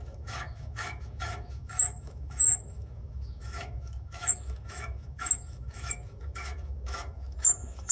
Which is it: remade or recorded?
remade